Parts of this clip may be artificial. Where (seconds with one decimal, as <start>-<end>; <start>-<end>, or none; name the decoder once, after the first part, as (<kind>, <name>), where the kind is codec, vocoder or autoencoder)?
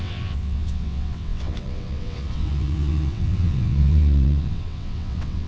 0.0-5.5 (vocoder, WaveNeXt)